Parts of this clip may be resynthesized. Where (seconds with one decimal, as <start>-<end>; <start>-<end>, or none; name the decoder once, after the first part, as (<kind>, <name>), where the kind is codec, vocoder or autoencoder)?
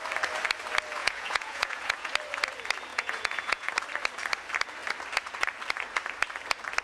1.0-2.1 (vocoder, Vocos); 2.9-3.7